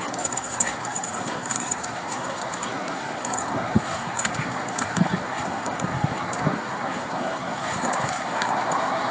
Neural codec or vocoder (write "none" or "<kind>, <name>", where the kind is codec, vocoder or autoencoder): codec, SNAC